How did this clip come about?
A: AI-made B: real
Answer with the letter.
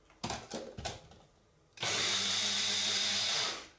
B